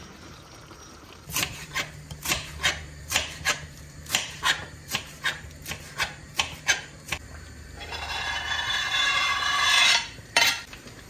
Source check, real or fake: fake